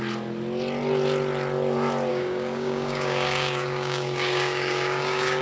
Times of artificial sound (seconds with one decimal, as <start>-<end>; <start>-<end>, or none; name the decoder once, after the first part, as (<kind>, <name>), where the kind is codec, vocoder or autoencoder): 2.1-5.4 (codec, DAC)